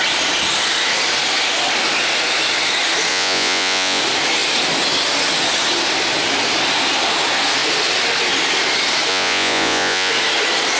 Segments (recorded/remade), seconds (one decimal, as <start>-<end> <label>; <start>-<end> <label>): 0.0-3.1 recorded; 3.1-4.0 remade; 4.0-9.1 recorded; 9.1-10.1 remade; 10.1-10.8 recorded